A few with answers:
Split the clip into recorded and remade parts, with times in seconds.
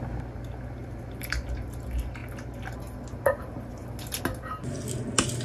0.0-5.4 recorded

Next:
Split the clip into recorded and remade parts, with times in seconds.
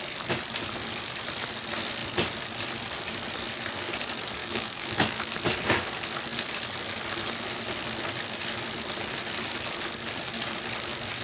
0.0-4.4 recorded; 4.4-5.3 remade; 5.3-11.2 recorded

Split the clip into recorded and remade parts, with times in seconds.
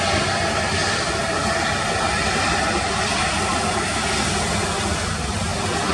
0.0-5.9 recorded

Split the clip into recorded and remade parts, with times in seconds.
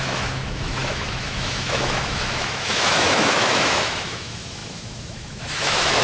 0.0-6.0 remade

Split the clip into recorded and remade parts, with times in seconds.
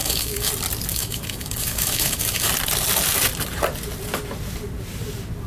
0.0-0.5 remade; 0.5-0.9 recorded; 0.9-2.5 remade; 2.5-5.5 recorded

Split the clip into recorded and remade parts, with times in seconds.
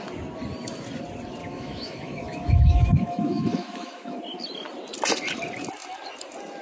0.0-1.4 recorded; 1.4-4.2 remade; 4.2-6.6 recorded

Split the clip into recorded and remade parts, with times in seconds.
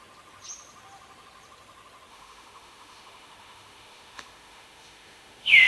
0.0-2.1 recorded; 2.1-5.7 remade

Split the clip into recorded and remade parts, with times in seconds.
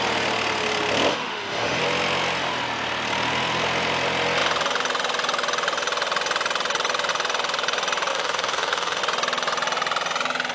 0.0-1.1 recorded; 1.1-1.8 remade; 1.8-8.1 recorded; 8.1-9.0 remade; 9.0-10.5 recorded